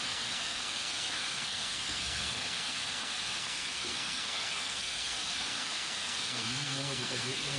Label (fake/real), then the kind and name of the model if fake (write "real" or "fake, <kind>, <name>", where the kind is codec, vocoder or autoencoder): fake, codec, SNAC